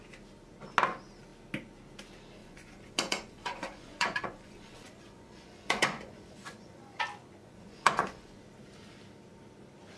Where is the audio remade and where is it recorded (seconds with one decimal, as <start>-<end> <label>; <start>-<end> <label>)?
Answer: 0.0-2.4 recorded; 2.4-7.0 remade; 7.0-7.4 recorded; 7.4-8.4 remade; 8.4-10.0 recorded